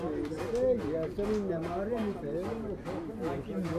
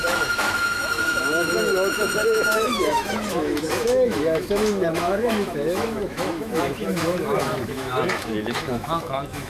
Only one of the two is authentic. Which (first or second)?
first